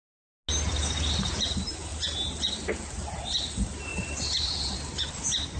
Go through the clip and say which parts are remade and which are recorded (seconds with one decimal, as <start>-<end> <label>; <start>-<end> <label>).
0.0-5.6 recorded